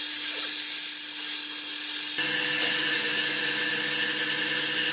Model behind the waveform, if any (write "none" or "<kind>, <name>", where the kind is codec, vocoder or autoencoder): none